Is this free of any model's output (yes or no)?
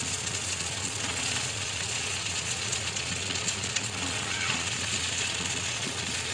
no